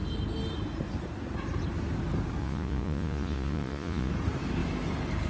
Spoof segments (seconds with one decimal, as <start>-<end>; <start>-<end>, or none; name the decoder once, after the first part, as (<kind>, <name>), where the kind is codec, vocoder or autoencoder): 2.4-4.1 (vocoder, Vocos)